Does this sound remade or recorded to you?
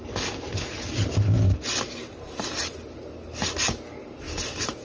recorded